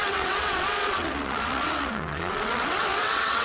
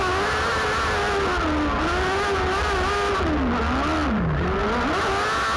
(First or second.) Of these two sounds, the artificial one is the first